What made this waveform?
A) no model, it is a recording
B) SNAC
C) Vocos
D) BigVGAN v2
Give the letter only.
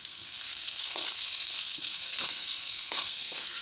B